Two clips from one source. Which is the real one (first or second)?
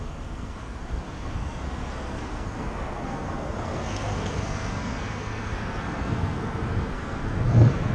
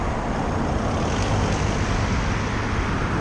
second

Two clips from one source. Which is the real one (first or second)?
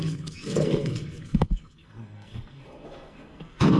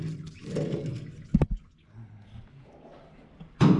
second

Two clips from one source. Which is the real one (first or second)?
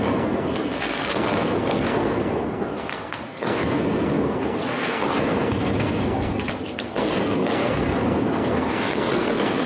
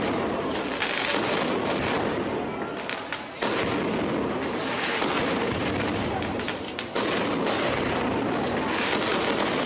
second